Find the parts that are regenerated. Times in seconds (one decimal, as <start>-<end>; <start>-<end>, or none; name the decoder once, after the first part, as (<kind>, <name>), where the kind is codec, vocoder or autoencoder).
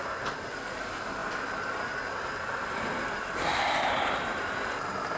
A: none